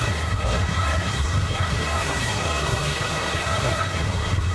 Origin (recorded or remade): remade